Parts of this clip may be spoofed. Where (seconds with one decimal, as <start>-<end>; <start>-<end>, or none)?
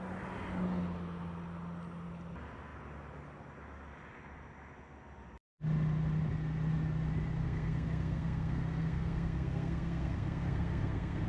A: 7.4-11.3